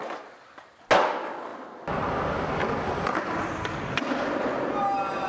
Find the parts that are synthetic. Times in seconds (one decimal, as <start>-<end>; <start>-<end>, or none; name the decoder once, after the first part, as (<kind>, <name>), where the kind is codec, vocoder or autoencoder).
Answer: none